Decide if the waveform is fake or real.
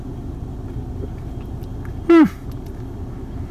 real